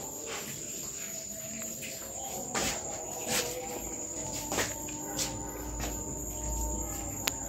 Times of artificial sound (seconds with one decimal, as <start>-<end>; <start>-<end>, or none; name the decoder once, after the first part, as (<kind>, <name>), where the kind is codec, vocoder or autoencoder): 2.6-3.4 (vocoder, BigVGAN v2)

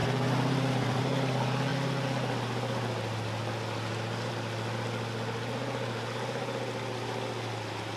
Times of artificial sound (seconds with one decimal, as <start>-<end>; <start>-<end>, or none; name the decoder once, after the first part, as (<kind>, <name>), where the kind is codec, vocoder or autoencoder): 0.0-1.0 (vocoder, BigVGAN v2)

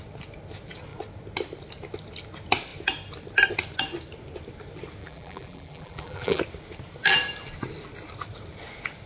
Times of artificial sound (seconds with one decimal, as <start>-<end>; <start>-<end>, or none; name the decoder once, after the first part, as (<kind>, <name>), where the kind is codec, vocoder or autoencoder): 5.0-6.4 (vocoder, BigVGAN v2)

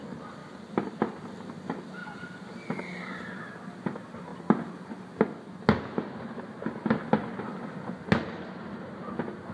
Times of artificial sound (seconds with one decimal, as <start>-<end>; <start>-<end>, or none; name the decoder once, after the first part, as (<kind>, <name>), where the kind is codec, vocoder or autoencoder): 0.4-1.1 (vocoder, BigVGAN v2); 2.0-3.5

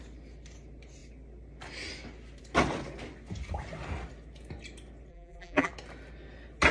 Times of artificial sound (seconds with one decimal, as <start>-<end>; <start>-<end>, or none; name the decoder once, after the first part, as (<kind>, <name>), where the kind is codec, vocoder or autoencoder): 5.1-5.7 (vocoder, BigVGAN v2)